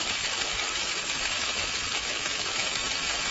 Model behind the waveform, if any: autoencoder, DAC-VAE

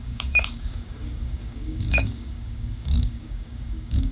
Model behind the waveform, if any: codec, DAC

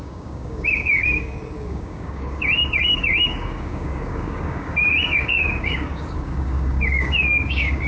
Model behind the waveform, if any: codec, DAC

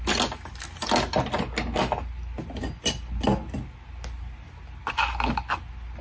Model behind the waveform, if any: none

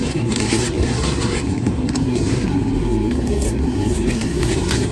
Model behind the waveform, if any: codec, SNAC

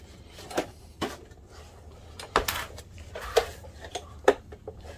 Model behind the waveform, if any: none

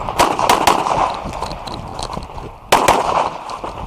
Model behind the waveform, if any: none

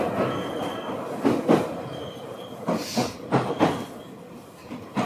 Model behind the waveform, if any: none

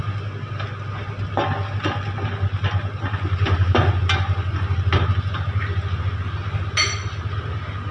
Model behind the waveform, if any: none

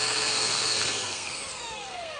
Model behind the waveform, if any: codec, SNAC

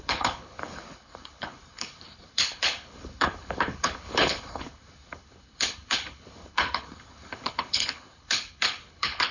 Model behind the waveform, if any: codec, HILCodec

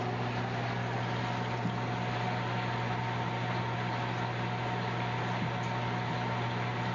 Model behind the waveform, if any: none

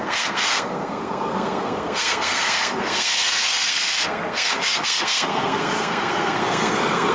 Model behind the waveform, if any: codec, SNAC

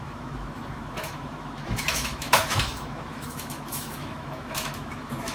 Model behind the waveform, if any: autoencoder, DAC-VAE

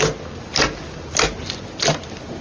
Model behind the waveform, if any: none